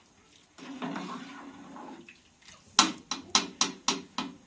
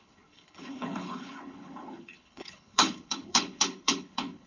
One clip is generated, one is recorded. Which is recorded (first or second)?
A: first